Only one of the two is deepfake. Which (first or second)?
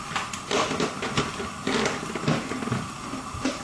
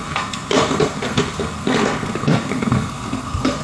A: second